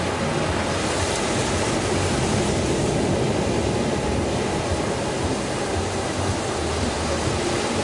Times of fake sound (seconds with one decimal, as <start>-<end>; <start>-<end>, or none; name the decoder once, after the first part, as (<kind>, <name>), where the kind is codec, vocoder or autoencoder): none